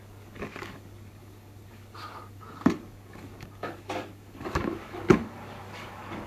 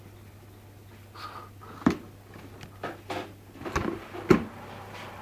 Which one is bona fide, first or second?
second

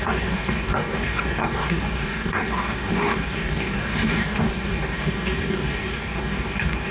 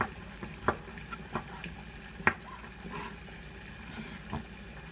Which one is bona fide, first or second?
second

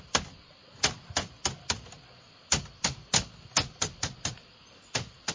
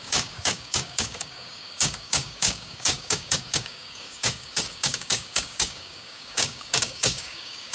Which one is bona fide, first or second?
first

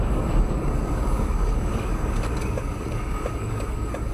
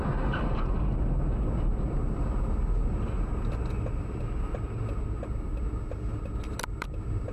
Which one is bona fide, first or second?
second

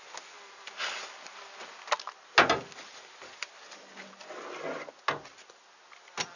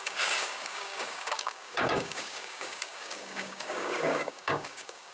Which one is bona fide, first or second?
first